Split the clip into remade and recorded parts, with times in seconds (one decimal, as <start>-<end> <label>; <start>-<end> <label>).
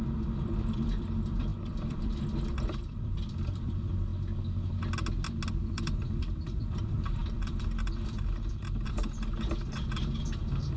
0.0-4.1 remade; 4.1-5.5 recorded; 5.5-10.8 remade